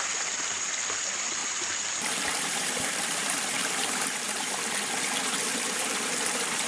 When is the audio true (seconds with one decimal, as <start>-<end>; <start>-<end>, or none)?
0.0-1.4; 4.6-5.5; 6.1-6.7